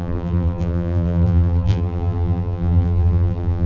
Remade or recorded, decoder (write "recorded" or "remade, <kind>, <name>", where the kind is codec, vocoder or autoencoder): remade, vocoder, BigVGAN v2